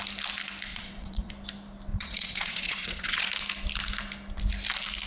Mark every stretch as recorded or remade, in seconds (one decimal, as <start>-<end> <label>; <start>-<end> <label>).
0.0-0.7 recorded; 0.7-1.3 remade; 1.3-1.9 recorded; 1.9-3.3 remade; 3.3-5.1 recorded

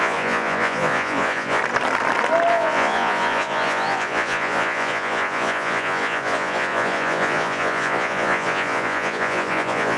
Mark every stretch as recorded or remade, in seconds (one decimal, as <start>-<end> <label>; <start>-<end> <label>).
0.0-1.6 remade; 1.6-2.5 recorded; 2.5-10.0 remade

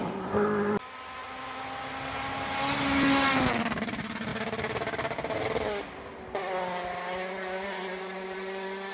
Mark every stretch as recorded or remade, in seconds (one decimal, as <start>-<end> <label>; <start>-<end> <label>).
0.0-1.2 remade; 1.2-3.5 recorded; 3.5-4.3 remade; 4.3-8.0 recorded; 8.0-8.9 remade

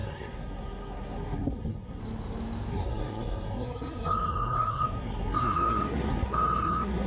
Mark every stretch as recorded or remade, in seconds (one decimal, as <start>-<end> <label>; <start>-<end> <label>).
0.0-2.0 remade; 2.0-2.7 recorded; 2.7-7.1 remade

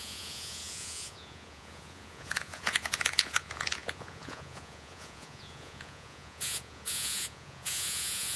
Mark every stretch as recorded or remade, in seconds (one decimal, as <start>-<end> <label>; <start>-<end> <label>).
0.0-8.4 remade

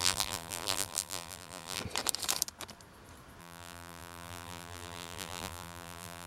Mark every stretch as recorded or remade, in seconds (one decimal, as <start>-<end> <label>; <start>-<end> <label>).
0.0-1.8 remade; 1.8-3.4 recorded; 3.4-6.3 remade

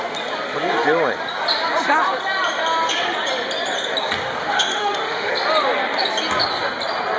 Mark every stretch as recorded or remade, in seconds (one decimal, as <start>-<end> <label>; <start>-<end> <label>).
0.0-4.4 recorded; 4.4-5.3 remade; 5.3-7.2 recorded

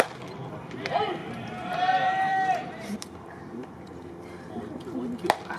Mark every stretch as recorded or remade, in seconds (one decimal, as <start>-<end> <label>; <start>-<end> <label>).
0.0-1.2 recorded; 1.2-4.6 remade; 4.6-5.6 recorded